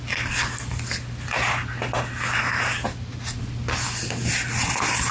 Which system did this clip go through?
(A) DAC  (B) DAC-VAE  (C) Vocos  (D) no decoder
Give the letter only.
D